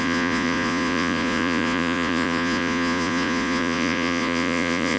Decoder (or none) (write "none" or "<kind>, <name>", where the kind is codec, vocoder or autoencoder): vocoder, Vocos